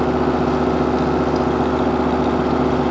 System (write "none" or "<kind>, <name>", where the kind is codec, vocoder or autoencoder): none